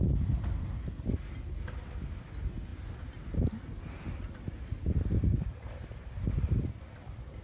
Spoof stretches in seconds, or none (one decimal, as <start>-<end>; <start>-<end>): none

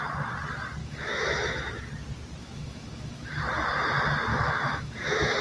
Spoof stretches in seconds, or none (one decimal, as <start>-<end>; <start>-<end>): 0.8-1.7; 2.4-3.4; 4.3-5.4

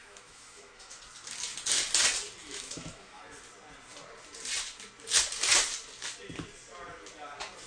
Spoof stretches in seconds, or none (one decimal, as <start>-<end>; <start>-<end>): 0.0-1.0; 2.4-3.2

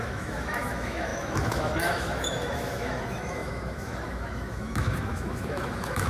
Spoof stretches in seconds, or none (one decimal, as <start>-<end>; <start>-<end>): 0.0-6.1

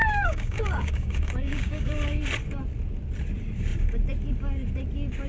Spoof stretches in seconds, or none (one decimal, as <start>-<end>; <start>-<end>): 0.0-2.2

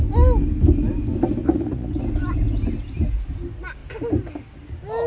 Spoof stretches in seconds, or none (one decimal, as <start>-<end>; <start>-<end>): 1.4-2.0